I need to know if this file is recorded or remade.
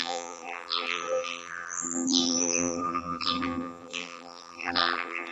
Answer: remade